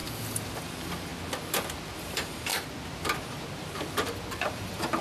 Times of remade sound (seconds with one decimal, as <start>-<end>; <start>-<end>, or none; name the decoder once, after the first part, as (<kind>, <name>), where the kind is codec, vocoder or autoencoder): 0.6-1.1 (vocoder, BigVGAN v2); 2.0-2.5; 4.4-5.0

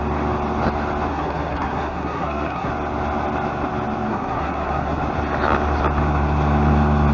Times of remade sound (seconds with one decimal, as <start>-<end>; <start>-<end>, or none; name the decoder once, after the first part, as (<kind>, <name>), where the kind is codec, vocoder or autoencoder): 1.1-2.7 (codec, SNAC); 4.1-5.0

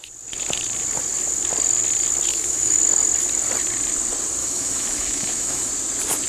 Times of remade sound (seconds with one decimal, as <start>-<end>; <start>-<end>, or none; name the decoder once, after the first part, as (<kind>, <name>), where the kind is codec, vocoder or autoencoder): 2.3-2.8 (autoencoder, DAC-VAE); 4.4-5.7